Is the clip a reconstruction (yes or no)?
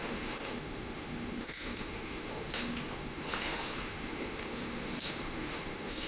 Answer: yes